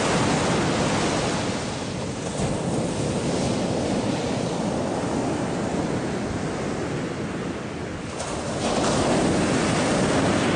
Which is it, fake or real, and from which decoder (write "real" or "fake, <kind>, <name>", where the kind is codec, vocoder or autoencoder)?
real